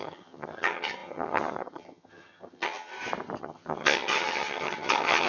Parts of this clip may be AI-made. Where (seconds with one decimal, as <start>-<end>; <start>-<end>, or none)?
0.0-2.9; 3.4-5.3